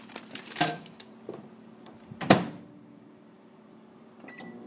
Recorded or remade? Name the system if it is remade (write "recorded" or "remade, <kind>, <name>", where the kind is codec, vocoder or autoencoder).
remade, vocoder, BigVGAN v2